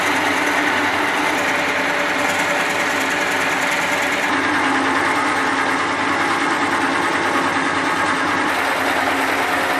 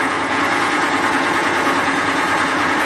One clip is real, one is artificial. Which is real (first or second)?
first